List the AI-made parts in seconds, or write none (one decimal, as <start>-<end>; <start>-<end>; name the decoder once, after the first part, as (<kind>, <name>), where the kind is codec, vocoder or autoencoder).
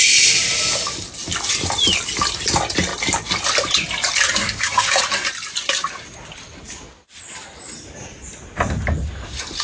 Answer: 4.4-5.0 (codec, DAC)